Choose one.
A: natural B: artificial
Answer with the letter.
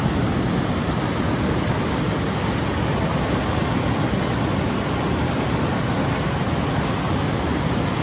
A